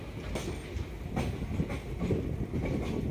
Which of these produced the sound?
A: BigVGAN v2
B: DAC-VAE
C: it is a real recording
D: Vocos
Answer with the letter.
C